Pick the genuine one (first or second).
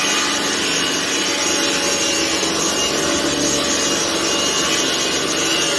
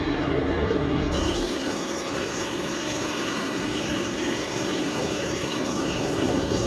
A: first